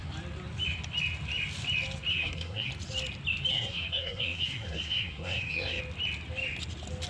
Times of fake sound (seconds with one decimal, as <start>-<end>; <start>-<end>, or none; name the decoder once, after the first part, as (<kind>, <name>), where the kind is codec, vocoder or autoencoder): 2.1-2.7 (codec, SNAC); 3.5-5.8